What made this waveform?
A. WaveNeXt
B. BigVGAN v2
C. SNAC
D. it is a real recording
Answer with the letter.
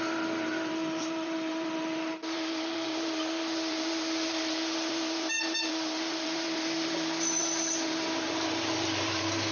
B